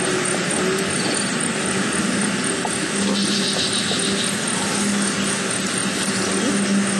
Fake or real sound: real